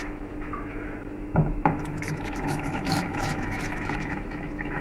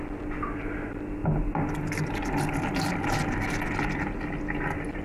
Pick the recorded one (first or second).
second